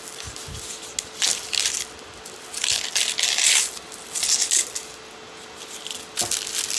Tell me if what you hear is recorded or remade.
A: recorded